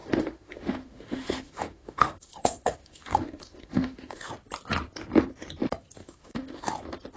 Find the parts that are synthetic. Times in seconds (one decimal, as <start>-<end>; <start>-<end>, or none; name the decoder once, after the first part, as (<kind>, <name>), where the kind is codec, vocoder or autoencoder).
0.0-4.3 (autoencoder, DAC-VAE); 6.0-6.7